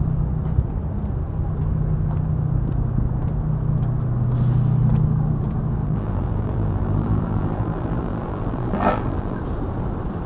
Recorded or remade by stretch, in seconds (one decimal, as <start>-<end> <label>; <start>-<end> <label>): 0.0-5.8 recorded; 5.8-9.4 remade; 9.4-10.3 recorded